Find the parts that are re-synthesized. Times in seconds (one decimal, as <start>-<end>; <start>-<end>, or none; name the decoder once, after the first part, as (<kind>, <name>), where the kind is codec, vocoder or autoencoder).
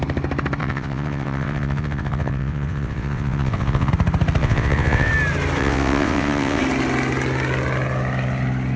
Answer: 0.6-3.9 (vocoder, WaveNeXt); 4.4-5.1; 5.6-6.6